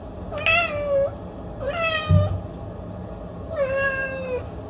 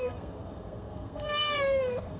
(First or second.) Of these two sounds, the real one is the first